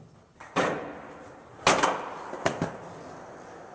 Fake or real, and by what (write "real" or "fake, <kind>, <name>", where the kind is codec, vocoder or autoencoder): real